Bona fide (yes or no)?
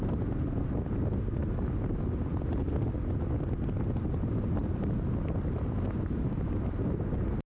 yes